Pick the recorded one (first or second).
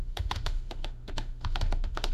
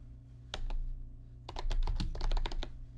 second